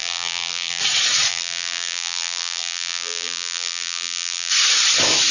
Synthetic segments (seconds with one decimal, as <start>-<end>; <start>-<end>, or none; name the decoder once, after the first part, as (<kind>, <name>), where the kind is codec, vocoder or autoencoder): 0.0-0.8 (vocoder, BigVGAN v2); 1.3-4.5